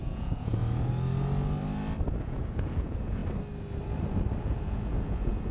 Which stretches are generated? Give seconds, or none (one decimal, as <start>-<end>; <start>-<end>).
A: 0.0-0.6; 2.2-3.2; 4.4-5.5